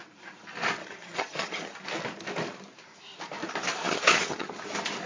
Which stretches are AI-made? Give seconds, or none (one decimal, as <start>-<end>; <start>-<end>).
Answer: 0.8-1.8; 3.8-4.5